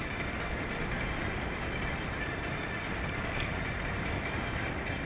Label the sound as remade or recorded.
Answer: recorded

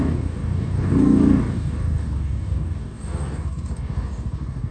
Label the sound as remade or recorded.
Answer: remade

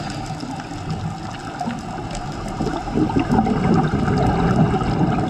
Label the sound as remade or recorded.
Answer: recorded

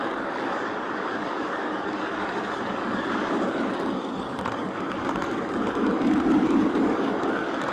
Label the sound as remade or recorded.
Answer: remade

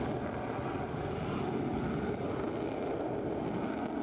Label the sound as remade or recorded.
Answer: recorded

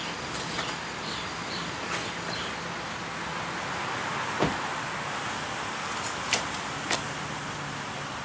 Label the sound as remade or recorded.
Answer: recorded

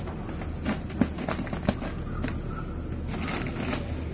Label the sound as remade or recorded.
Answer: recorded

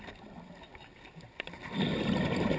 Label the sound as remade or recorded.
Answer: recorded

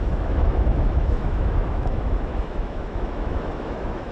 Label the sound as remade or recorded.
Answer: remade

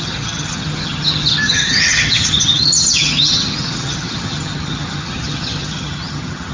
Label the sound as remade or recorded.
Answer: remade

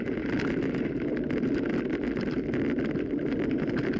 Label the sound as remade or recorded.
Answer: recorded